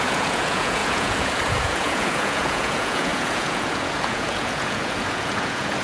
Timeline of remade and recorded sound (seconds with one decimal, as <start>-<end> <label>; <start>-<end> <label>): 0.0-5.8 remade